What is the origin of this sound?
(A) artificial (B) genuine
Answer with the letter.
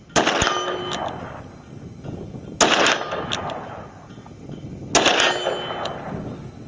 B